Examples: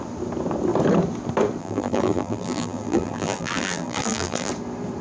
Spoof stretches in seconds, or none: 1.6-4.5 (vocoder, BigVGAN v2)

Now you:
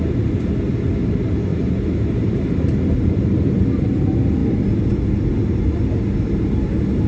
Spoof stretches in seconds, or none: 1.5-3.5 (vocoder, BigVGAN v2)